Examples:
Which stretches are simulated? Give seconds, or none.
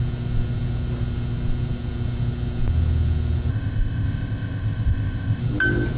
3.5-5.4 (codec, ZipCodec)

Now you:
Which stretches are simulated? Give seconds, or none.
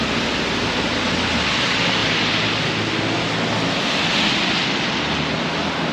none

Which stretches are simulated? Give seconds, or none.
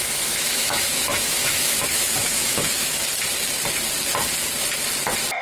0.0-2.9 (autoencoder, DAC-VAE)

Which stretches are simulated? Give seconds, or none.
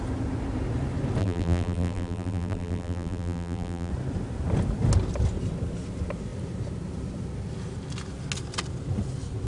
1.2-3.9 (vocoder, BigVGAN v2)